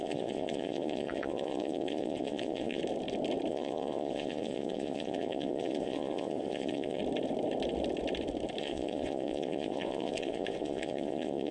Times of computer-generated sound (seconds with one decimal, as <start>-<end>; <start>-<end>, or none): 0.0-2.8; 3.5-7.0; 8.6-11.5